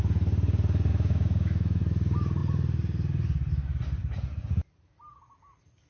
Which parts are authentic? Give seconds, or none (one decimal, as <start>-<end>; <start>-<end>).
0.0-0.9; 1.8-5.9